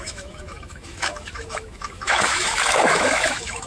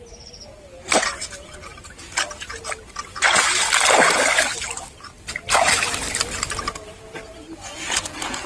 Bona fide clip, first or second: second